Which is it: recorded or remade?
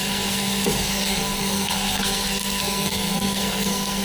remade